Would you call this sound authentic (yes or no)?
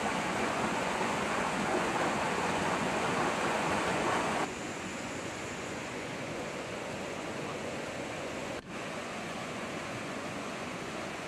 no